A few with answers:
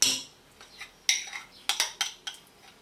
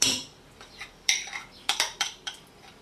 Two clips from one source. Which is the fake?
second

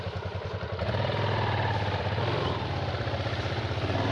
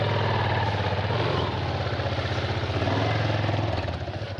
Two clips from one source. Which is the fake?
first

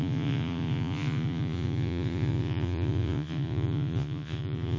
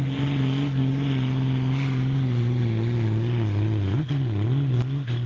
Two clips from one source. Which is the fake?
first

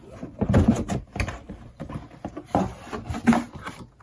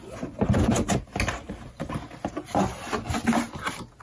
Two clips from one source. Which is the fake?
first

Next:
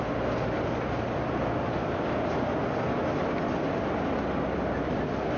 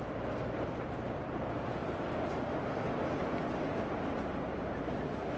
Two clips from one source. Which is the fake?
second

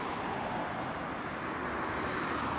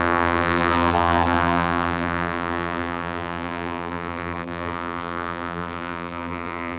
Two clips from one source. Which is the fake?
second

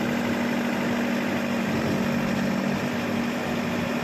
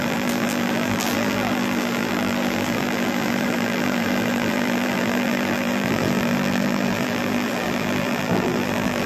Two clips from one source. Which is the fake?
second